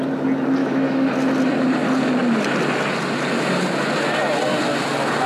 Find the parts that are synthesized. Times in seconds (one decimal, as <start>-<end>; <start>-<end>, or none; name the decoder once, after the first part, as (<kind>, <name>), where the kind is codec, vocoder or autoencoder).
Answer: 0.6-1.1 (autoencoder, DAC-VAE)